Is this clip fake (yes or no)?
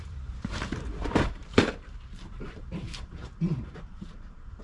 yes